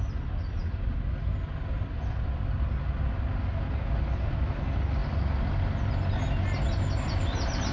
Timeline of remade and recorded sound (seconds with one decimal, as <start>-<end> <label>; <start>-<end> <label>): 0.0-7.7 recorded